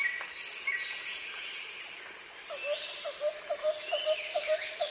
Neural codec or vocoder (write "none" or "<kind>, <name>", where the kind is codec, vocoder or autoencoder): none